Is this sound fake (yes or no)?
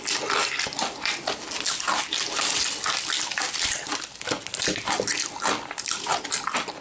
no